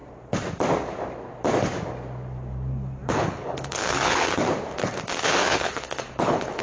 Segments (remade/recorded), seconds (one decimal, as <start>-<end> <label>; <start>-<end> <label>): 0.0-3.1 recorded; 3.1-4.4 remade; 4.4-5.2 recorded; 5.2-6.6 remade